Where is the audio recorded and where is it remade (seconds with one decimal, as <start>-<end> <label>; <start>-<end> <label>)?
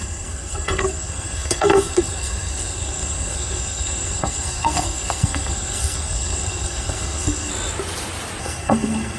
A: 0.0-7.5 remade; 7.5-8.4 recorded; 8.4-9.2 remade